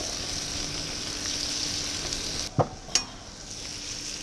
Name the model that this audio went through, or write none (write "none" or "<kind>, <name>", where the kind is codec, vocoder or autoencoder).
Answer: none